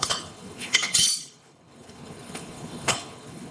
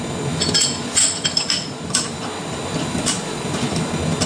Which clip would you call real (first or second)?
second